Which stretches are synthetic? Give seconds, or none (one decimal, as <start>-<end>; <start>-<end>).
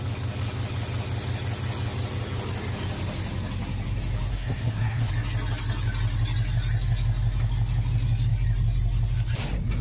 4.3-5.1